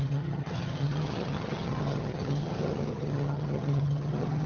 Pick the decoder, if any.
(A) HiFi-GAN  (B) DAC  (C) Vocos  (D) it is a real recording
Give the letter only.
A